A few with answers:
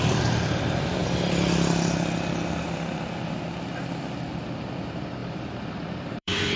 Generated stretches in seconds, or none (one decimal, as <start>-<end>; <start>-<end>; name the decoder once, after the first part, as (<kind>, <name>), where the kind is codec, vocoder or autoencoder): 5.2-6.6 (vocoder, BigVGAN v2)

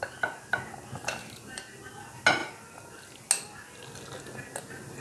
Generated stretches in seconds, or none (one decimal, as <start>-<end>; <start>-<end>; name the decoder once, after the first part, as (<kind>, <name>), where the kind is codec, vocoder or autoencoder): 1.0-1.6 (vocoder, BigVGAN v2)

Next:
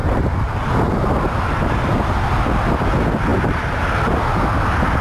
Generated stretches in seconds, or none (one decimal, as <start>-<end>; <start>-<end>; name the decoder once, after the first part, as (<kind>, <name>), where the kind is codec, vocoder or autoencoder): none

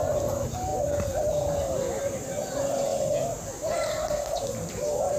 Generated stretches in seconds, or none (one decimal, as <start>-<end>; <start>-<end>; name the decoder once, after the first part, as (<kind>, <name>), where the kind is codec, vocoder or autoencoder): 0.0-0.7 (vocoder, BigVGAN v2); 2.0-2.9; 4.1-5.2